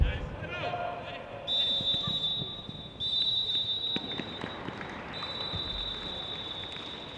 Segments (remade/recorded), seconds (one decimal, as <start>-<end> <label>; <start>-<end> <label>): 0.0-7.2 recorded